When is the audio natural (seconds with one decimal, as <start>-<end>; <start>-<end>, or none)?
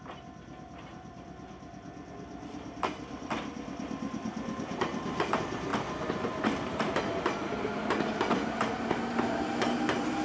0.0-10.2